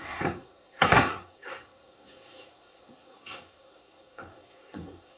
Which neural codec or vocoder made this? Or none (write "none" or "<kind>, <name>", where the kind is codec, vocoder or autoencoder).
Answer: codec, SNAC